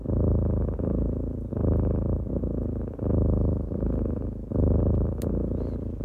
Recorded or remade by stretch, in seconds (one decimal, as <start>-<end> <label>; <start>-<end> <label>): 0.0-6.0 recorded